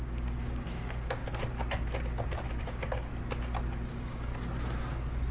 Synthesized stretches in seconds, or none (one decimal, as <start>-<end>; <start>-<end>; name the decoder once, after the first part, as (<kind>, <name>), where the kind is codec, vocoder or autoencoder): 0.0-1.2 (codec, DAC); 2.6-3.1; 3.9-4.3